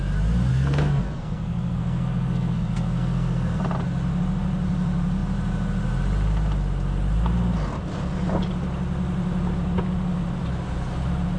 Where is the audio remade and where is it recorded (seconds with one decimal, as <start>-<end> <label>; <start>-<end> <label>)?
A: 0.0-0.5 recorded; 0.5-3.6 remade; 3.6-11.4 recorded